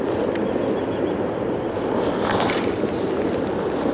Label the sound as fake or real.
real